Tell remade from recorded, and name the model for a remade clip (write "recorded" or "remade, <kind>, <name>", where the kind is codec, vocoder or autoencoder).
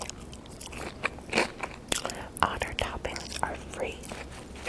recorded